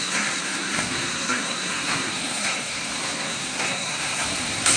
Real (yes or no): no